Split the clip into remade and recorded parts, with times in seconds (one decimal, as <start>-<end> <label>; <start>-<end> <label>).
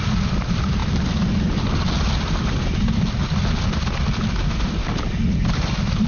0.0-6.1 recorded